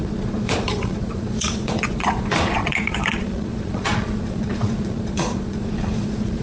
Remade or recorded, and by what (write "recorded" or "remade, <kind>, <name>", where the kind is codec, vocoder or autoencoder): remade, vocoder, Vocos